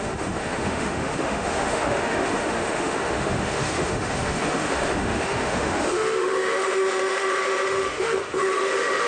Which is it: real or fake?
fake